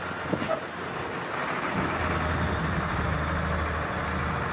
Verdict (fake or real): real